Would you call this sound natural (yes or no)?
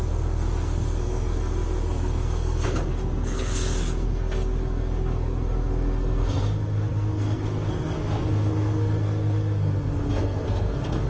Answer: no